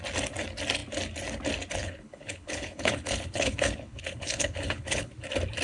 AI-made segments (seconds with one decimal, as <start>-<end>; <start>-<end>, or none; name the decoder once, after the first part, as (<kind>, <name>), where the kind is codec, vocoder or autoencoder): 1.8-5.1 (codec, HILCodec)